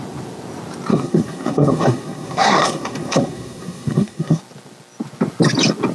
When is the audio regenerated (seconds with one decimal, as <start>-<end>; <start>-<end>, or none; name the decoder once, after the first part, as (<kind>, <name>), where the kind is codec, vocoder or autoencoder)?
0.9-4.4 (codec, SNAC)